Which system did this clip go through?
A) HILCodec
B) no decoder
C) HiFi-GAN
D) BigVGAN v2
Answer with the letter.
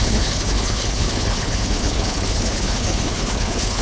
A